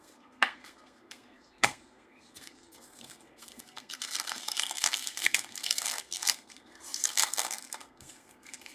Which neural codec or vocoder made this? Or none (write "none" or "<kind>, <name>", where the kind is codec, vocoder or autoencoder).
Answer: codec, SNAC